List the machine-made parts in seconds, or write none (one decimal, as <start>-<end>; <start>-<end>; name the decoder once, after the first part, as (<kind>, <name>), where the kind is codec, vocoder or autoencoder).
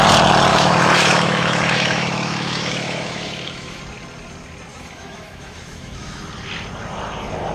0.5-3.8 (autoencoder, DAC-VAE); 4.7-6.2